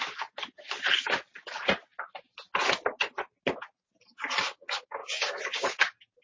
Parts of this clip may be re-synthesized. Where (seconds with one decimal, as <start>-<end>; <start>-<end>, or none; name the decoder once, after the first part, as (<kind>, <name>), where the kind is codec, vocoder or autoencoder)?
5.0-5.8 (codec, DAC)